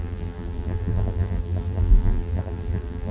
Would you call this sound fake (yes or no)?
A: yes